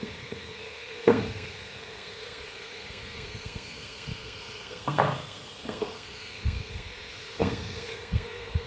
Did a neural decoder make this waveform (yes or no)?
yes